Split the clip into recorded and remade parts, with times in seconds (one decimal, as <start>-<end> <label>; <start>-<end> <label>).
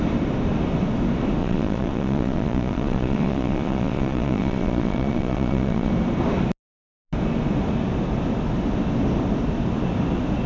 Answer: 0.0-1.4 recorded; 1.4-5.9 remade; 5.9-10.5 recorded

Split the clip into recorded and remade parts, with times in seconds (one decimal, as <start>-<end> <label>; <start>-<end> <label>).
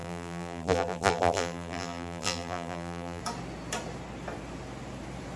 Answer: 0.0-3.2 remade; 3.2-5.4 recorded